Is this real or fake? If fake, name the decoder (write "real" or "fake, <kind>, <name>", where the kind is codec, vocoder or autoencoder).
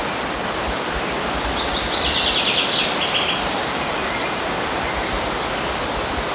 real